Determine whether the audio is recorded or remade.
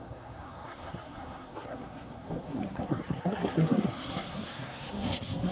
remade